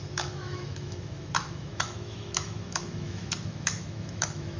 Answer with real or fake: fake